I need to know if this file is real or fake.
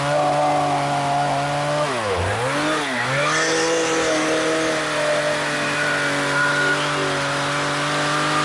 real